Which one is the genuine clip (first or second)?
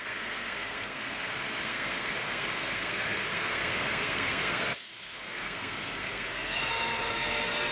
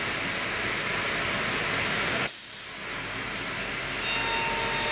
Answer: second